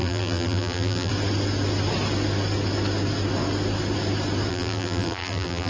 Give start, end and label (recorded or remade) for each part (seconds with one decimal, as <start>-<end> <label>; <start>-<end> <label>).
0.0-1.1 remade; 1.1-4.5 recorded; 4.5-5.7 remade